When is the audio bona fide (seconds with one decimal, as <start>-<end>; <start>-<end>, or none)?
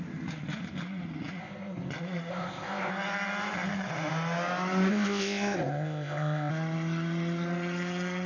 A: 0.0-1.4; 1.9-2.3; 2.9-4.9; 6.5-8.3